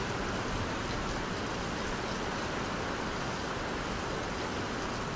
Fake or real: real